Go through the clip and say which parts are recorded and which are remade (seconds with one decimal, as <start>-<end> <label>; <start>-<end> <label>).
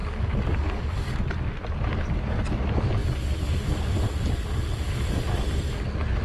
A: 0.0-1.3 remade; 1.3-6.2 recorded